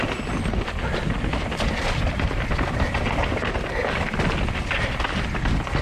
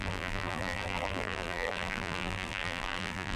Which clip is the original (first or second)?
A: first